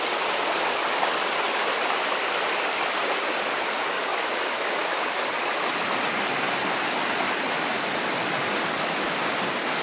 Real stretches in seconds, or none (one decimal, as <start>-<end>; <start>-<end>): 0.0-9.8